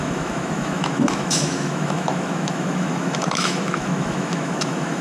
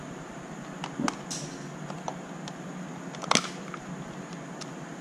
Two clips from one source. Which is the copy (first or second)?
first